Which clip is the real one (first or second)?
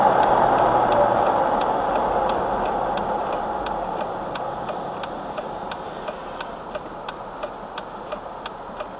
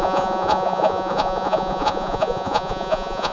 first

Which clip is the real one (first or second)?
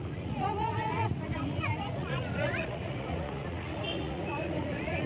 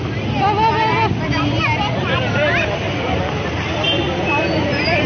second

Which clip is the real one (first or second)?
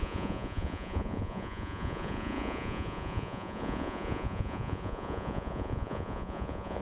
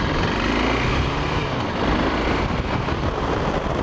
second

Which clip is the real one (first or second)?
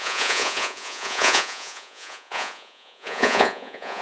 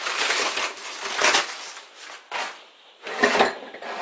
second